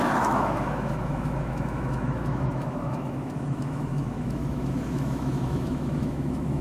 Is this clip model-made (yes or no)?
yes